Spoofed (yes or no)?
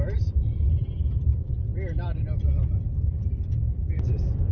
yes